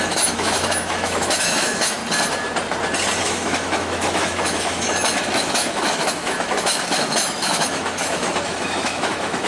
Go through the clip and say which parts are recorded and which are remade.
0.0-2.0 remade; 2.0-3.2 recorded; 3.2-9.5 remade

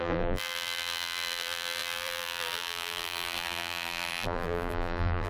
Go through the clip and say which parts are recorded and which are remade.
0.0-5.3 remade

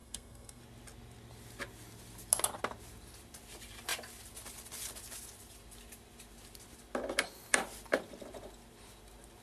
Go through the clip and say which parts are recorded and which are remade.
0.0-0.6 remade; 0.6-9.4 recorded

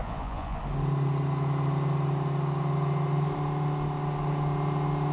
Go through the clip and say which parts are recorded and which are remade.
0.0-0.6 remade; 0.6-5.1 recorded